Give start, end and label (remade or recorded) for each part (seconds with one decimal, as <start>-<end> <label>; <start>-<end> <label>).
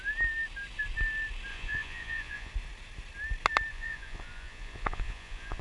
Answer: 0.0-1.5 recorded; 1.5-2.5 remade; 2.5-3.7 recorded; 3.7-5.6 remade